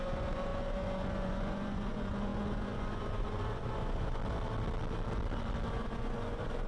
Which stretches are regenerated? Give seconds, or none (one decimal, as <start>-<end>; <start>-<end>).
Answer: 0.0-4.2; 5.7-6.7

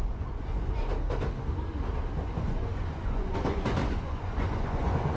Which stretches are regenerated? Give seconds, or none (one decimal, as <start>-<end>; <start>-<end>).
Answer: 0.0-0.9; 2.2-5.2

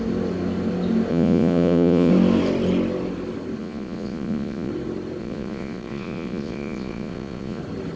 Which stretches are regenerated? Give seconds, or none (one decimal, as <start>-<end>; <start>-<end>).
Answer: 1.1-2.1; 3.6-4.7; 5.2-7.6

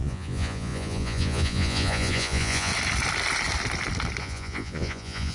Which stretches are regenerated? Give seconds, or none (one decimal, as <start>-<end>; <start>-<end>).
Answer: 0.0-2.7; 4.2-5.3

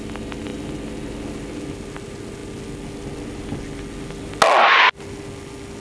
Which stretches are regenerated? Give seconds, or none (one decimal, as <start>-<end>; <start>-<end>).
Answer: none

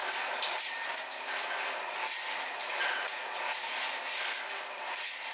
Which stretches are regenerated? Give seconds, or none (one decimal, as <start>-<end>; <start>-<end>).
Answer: 2.6-3.8

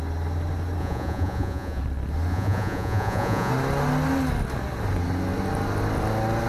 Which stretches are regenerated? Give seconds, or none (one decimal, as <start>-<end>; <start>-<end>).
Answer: 0.8-1.8; 2.3-3.5